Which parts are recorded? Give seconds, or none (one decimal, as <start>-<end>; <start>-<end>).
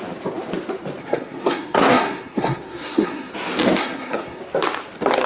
0.0-1.0; 3.3-3.8; 4.4-5.3